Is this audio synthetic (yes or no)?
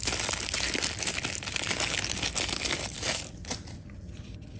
no